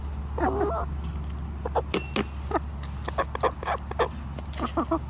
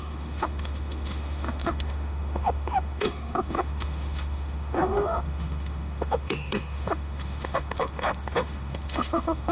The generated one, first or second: second